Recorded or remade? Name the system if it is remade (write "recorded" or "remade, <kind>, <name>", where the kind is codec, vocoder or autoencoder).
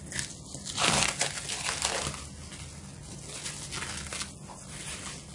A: recorded